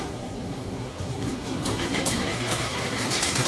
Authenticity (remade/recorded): remade